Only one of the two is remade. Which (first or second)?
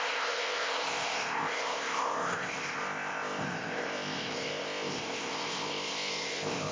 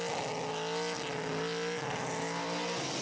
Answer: first